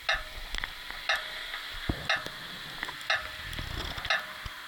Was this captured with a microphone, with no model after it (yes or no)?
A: yes